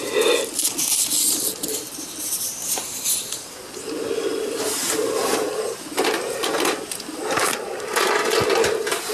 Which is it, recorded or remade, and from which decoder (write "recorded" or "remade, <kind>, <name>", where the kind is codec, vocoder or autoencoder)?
recorded